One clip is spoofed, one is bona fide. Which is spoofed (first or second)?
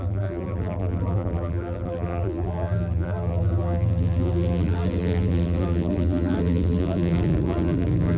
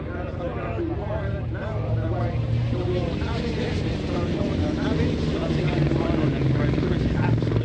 first